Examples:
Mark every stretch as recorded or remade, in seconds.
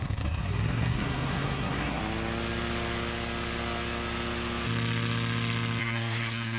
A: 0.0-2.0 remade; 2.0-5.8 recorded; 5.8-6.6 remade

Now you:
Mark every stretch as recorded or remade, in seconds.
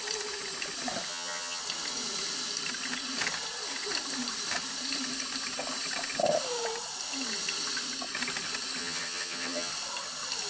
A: 0.0-1.1 recorded; 1.1-1.6 remade; 1.6-8.8 recorded; 8.8-9.7 remade; 9.7-10.5 recorded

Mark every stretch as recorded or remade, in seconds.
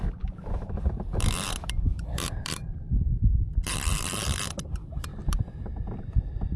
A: 0.0-1.1 recorded; 1.1-3.9 remade; 3.9-5.1 recorded; 5.1-5.6 remade; 5.6-6.6 recorded